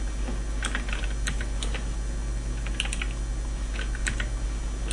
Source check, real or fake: real